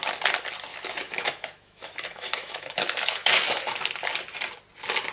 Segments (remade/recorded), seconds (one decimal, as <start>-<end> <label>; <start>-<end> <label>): 0.0-0.7 recorded; 0.7-3.8 remade; 3.8-5.1 recorded